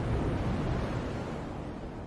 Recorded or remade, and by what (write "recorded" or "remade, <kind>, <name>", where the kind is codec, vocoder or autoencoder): remade, vocoder, BigVGAN v2